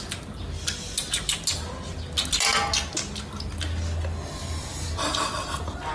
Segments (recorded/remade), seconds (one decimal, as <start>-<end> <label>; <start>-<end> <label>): 0.0-4.7 recorded; 4.7-5.9 remade